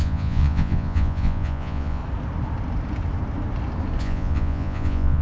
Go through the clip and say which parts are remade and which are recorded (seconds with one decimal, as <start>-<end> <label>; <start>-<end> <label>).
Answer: 0.0-2.0 remade; 2.0-4.0 recorded; 4.0-5.2 remade